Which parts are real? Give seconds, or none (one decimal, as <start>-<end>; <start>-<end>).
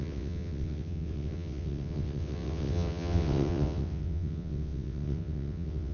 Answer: none